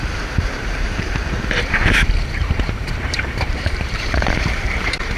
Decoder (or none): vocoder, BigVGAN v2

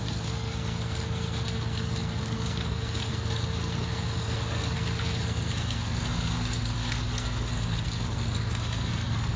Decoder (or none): codec, SNAC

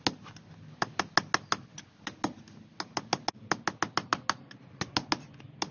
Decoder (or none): none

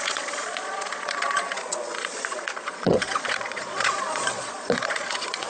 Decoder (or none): vocoder, Vocos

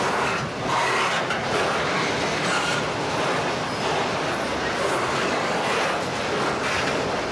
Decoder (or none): none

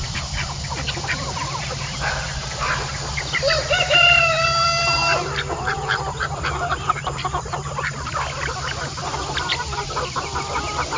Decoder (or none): vocoder, BigVGAN v2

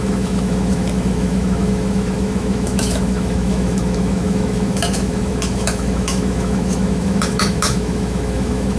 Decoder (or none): autoencoder, DAC-VAE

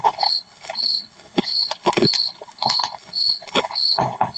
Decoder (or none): codec, HILCodec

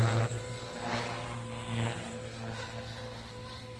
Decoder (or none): none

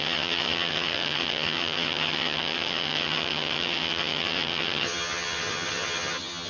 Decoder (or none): vocoder, HiFi-GAN